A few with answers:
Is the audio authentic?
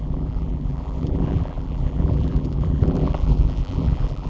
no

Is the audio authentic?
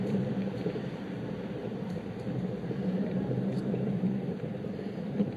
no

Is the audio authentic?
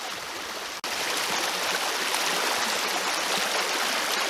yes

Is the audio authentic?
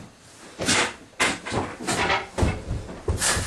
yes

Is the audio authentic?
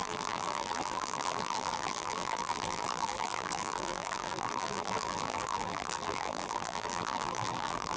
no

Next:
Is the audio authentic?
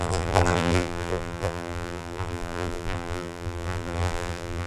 no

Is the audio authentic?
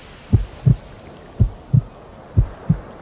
yes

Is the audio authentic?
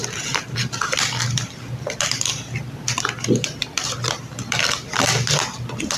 no